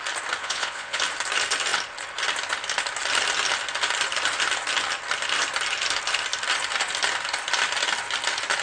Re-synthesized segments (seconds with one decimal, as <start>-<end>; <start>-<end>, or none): 0.4-1.0